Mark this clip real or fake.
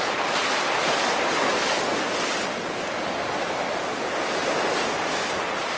real